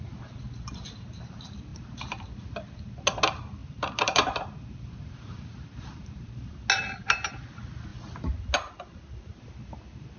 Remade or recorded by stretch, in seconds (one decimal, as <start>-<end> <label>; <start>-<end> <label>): 0.0-3.6 recorded; 3.6-6.5 remade; 6.5-10.2 recorded